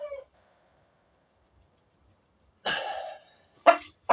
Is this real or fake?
fake